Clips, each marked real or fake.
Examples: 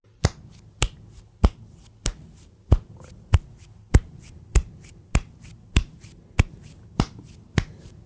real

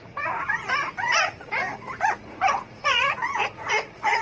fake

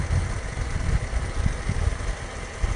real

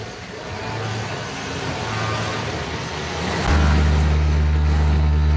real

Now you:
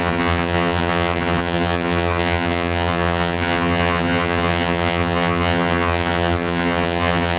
fake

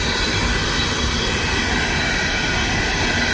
real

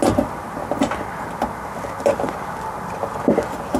real